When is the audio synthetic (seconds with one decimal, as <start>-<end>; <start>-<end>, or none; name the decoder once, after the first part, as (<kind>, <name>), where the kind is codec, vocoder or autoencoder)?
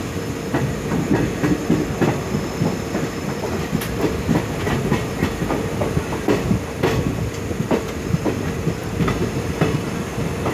none